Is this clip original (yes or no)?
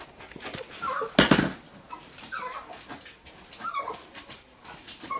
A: yes